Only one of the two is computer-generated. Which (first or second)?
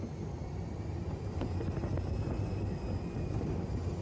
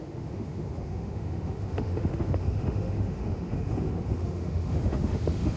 second